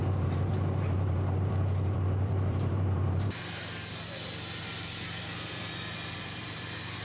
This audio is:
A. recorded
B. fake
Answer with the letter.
B